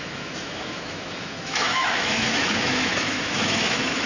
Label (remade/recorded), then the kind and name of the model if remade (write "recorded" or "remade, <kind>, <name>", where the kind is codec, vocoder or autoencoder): remade, autoencoder, DAC-VAE